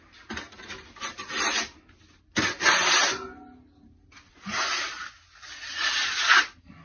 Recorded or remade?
recorded